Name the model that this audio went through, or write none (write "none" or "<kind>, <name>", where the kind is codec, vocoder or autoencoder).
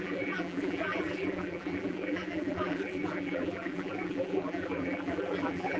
vocoder, BigVGAN v2